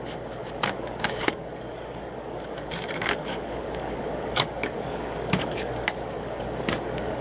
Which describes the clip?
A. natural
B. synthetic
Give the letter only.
B